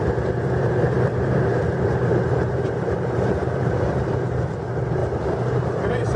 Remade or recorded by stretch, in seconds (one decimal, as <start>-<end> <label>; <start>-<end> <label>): 0.0-6.2 remade

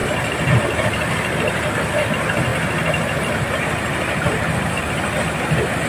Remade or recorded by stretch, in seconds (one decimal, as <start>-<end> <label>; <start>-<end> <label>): 0.0-5.9 recorded

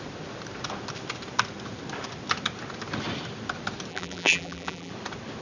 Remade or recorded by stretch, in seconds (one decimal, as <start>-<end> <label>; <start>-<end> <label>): 0.0-3.9 recorded; 3.9-4.9 remade; 4.9-5.4 recorded

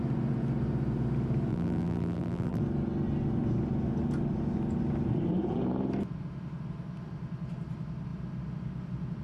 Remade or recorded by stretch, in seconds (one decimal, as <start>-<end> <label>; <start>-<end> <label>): 0.0-1.5 recorded; 1.5-2.6 remade; 2.6-9.2 recorded

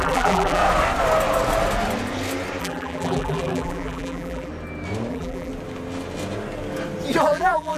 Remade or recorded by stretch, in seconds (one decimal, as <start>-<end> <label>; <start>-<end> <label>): 0.0-0.6 remade; 0.6-2.6 recorded; 2.6-4.5 remade; 4.5-5.1 recorded; 5.1-5.5 remade; 5.5-7.2 recorded; 7.2-7.8 remade